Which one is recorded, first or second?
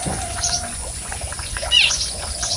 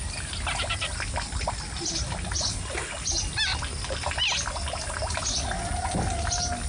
second